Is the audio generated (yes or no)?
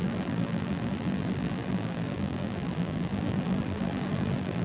yes